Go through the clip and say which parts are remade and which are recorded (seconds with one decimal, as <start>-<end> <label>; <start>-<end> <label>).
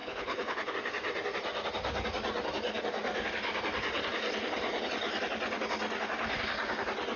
0.0-0.7 remade; 0.7-7.2 recorded